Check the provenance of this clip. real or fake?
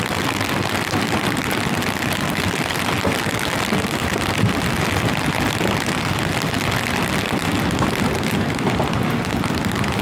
real